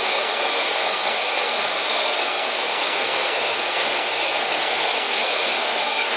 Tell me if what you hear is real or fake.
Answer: fake